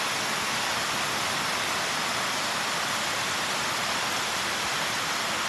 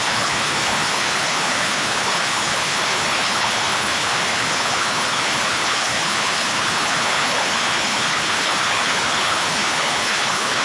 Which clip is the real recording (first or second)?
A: first